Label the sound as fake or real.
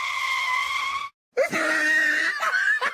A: real